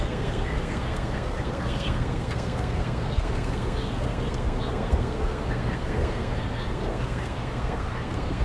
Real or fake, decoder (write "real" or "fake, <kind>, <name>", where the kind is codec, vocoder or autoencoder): fake, codec, SNAC